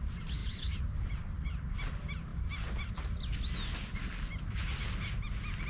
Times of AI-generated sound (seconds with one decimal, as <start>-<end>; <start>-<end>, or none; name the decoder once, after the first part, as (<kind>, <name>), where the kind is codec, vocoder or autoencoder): 0.4-1.7 (vocoder, BigVGAN v2)